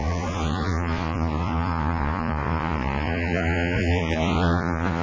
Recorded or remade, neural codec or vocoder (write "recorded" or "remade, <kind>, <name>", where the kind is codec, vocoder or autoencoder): remade, vocoder, Vocos